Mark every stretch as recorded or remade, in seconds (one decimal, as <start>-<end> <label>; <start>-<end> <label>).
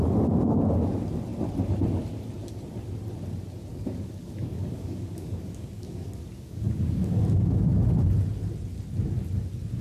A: 0.0-3.7 recorded; 3.7-7.6 remade; 7.6-9.8 recorded